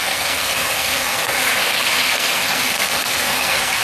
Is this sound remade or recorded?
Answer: remade